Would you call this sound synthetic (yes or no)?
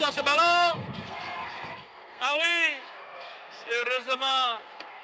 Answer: yes